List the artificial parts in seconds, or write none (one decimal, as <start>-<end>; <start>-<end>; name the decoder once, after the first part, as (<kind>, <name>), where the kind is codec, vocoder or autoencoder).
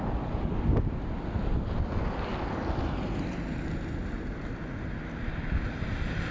none